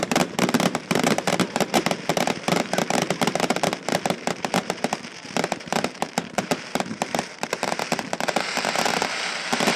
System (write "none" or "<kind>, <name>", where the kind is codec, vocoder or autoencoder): vocoder, BigVGAN v2